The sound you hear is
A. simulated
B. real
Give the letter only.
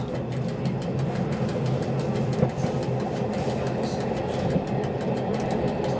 B